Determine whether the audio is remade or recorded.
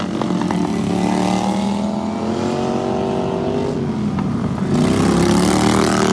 recorded